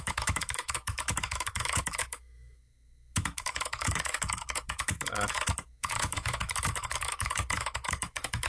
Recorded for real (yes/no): no